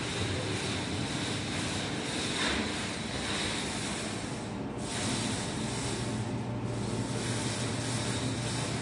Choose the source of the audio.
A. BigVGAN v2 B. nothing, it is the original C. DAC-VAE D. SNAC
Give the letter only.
B